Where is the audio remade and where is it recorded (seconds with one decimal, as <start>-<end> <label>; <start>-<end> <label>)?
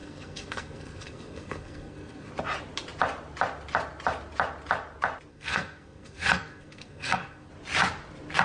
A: 0.0-2.3 remade; 2.3-5.3 recorded; 5.3-7.5 remade; 7.5-8.4 recorded